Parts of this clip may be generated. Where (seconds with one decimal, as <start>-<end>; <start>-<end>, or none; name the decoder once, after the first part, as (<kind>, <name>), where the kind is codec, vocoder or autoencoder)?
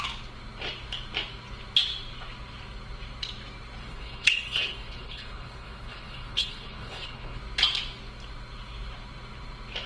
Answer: 3.8-7.4 (codec, HILCodec)